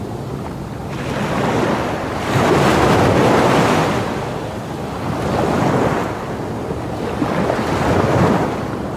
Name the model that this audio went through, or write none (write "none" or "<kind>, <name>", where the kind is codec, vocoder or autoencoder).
none